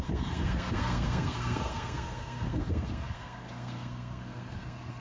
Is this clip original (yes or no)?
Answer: no